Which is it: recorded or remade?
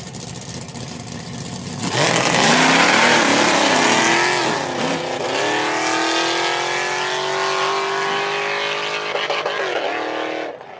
recorded